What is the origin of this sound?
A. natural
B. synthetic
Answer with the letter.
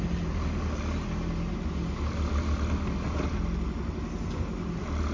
A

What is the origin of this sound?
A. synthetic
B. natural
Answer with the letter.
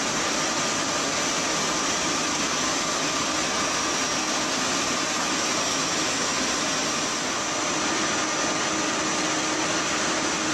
B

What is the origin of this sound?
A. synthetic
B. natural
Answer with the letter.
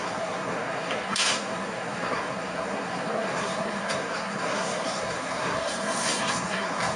A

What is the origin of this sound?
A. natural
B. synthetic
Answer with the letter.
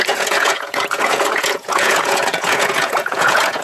B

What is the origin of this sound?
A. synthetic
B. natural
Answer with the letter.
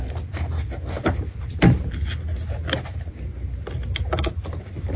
B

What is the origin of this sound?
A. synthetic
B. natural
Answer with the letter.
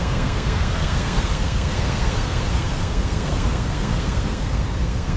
A